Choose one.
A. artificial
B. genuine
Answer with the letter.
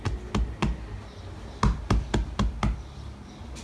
B